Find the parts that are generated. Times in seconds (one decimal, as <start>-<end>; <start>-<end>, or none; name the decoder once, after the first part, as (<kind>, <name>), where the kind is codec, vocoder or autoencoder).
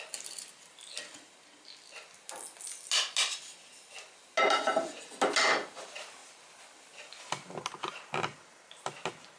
none